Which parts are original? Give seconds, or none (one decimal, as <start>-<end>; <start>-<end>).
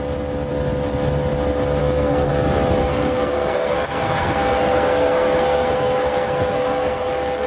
0.0-1.8; 2.3-2.8